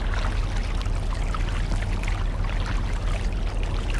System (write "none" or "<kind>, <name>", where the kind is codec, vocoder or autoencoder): none